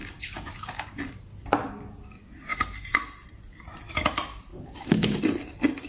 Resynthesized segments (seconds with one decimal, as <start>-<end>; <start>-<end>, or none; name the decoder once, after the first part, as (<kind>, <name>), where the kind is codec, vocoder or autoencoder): 0.0-1.0 (codec, DAC); 4.5-5.2